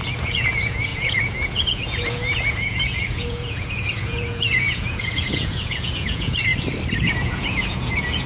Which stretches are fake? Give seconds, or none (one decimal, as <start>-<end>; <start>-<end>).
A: 0.0-6.5; 7.0-8.3